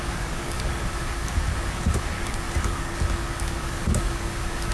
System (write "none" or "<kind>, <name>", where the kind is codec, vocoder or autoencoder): codec, DAC